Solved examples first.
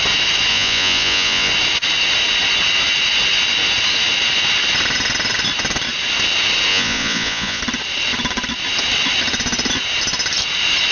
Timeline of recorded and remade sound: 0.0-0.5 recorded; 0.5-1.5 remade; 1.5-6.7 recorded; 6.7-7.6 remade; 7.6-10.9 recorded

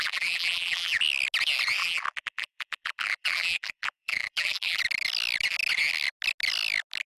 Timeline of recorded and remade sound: 0.0-1.0 remade; 1.0-1.8 recorded; 1.8-4.8 remade; 4.8-7.2 recorded